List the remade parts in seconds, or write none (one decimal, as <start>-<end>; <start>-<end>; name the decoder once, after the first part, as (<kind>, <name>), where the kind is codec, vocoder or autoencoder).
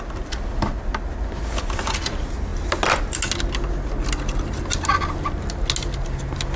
none